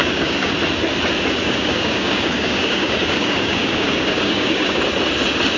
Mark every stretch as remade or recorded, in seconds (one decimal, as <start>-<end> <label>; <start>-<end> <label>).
0.0-0.5 remade; 0.5-1.4 recorded; 1.4-4.8 remade; 4.8-5.6 recorded